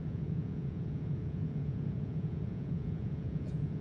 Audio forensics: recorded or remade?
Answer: remade